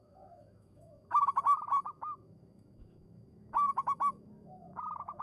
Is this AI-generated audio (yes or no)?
yes